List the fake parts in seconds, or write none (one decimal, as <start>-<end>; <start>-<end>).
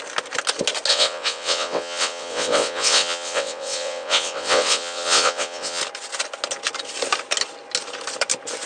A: 0.9-5.8